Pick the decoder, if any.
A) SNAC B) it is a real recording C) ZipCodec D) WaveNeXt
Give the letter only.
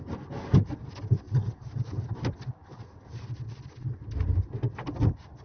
B